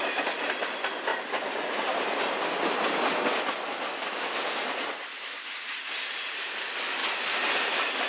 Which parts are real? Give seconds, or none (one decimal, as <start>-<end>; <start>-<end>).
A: 0.0-8.1